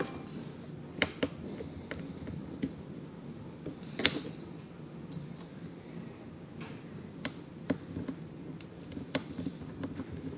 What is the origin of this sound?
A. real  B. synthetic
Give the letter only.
A